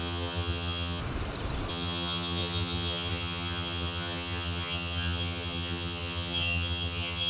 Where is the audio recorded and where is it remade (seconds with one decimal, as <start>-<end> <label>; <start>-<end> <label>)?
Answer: 0.0-1.0 remade; 1.0-1.7 recorded; 1.7-7.3 remade